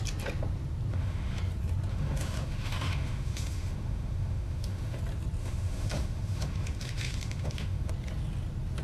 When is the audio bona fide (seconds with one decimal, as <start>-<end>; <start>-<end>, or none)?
0.0-0.9; 1.4-1.9; 5.0-5.4; 7.9-8.8